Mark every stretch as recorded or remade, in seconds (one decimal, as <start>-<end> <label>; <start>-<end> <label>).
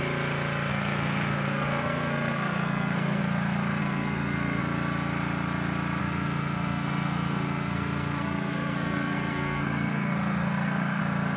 0.0-0.7 recorded; 0.7-3.2 remade; 3.2-3.8 recorded; 3.8-4.6 remade; 4.6-6.0 recorded; 6.0-11.0 remade; 11.0-11.4 recorded